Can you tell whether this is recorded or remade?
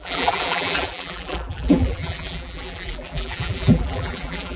remade